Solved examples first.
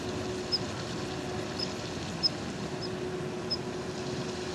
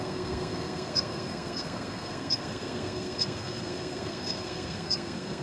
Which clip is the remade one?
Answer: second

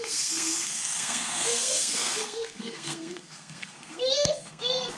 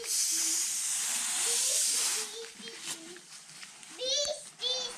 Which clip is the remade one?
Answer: first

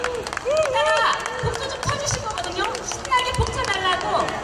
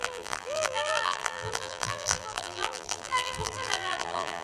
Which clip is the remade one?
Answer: second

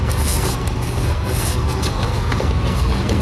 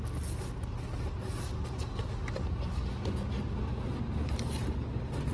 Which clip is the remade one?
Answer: first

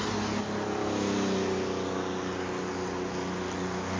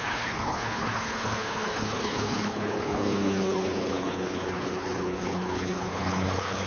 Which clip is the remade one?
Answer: second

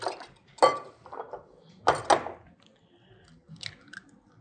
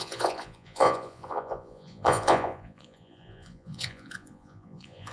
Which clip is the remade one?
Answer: second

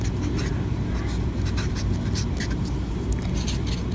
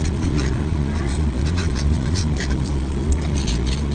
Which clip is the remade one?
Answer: second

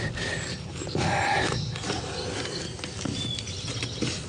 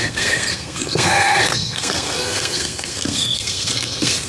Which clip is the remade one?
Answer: second